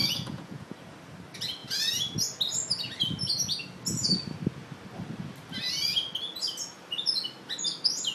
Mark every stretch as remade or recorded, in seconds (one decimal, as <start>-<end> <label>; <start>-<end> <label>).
0.0-0.7 remade; 0.7-8.1 recorded